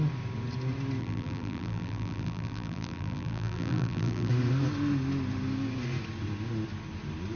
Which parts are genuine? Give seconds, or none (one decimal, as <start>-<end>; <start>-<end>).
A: 0.0-1.0; 4.3-7.4